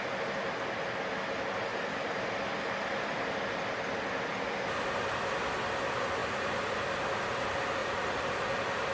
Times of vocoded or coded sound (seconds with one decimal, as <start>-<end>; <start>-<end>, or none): 1.7-2.3; 6.2-6.7; 7.8-8.3